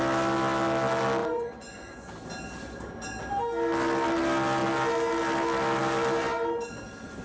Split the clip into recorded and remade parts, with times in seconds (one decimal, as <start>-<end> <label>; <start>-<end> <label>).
0.0-1.2 recorded; 1.2-2.1 remade; 2.1-7.2 recorded